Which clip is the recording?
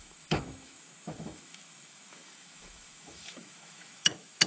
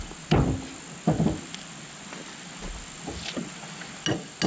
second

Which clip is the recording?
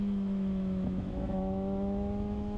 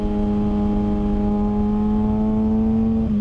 second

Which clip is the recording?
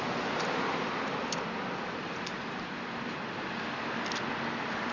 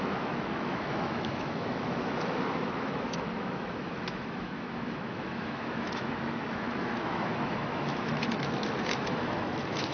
first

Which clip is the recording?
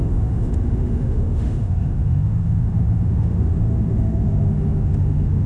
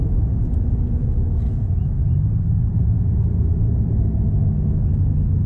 second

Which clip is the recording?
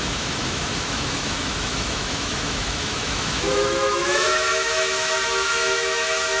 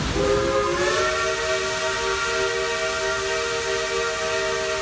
second